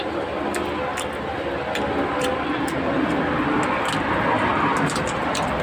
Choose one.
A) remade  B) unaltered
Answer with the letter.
B